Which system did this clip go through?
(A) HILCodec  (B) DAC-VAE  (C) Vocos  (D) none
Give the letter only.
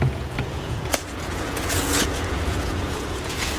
C